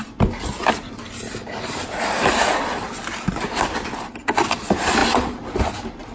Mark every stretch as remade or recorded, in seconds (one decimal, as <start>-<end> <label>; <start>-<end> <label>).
0.0-6.1 recorded